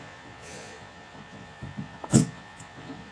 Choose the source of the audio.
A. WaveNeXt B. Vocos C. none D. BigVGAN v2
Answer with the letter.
B